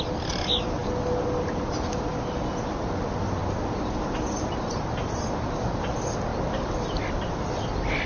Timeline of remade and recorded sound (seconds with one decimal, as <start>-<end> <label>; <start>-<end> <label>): 0.0-8.1 recorded

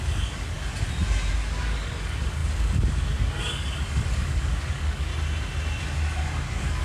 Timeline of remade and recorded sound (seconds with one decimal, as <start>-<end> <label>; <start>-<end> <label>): 0.0-0.7 remade; 0.7-1.3 recorded; 1.3-5.1 remade; 5.1-5.8 recorded; 5.8-6.8 remade

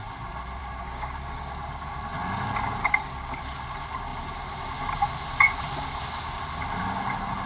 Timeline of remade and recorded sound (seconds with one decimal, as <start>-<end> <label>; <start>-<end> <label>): 0.0-0.6 recorded; 0.6-1.5 remade; 1.5-2.8 recorded; 2.8-3.4 remade; 3.4-7.5 recorded

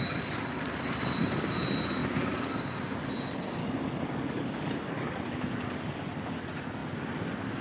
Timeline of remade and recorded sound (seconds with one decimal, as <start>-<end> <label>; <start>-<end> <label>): 0.0-3.6 recorded; 3.6-5.3 remade; 5.3-7.6 recorded

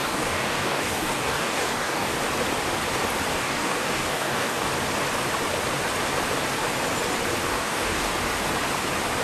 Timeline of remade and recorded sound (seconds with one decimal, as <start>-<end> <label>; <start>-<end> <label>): 0.0-2.1 remade; 2.1-3.3 recorded; 3.3-4.7 remade; 4.7-7.5 recorded; 7.5-8.1 remade; 8.1-9.2 recorded

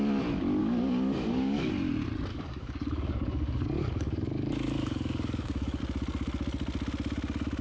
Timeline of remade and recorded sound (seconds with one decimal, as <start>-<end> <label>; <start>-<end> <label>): 0.0-0.6 recorded; 0.6-1.7 remade; 1.7-2.3 recorded; 2.3-5.8 remade; 5.8-7.6 recorded